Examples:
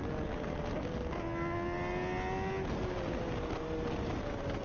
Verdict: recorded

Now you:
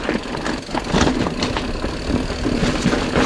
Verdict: recorded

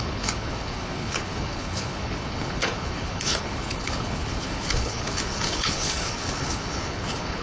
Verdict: remade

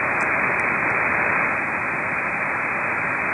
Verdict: recorded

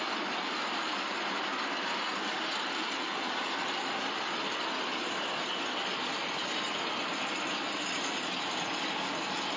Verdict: recorded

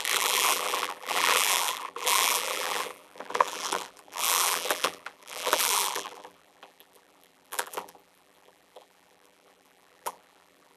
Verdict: remade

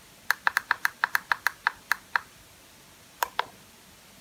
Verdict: recorded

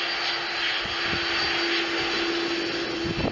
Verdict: recorded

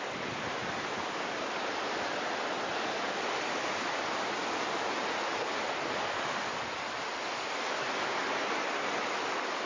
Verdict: recorded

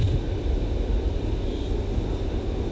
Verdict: recorded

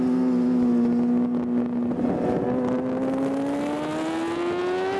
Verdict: recorded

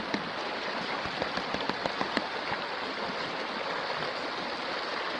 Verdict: recorded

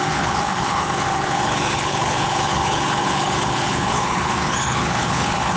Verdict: remade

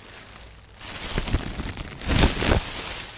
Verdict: recorded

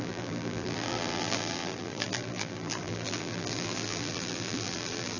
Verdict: remade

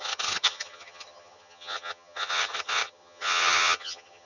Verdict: remade